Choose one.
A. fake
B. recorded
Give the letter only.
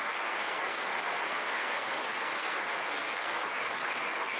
A